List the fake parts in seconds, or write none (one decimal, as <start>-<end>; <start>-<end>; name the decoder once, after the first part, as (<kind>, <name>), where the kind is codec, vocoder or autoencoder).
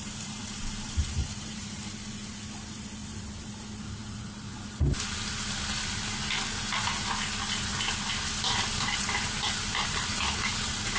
0.4-1.8 (vocoder, BigVGAN v2); 3.0-3.5; 9.6-11.0